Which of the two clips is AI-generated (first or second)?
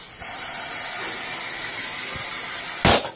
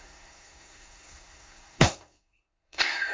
second